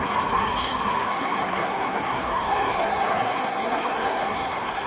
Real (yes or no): no